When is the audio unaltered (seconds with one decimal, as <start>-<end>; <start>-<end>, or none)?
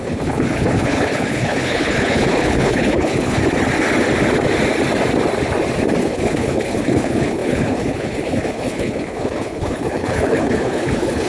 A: 3.4-6.0